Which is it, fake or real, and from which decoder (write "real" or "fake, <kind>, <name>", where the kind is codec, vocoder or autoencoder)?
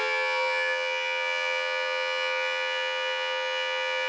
fake, vocoder, HiFi-GAN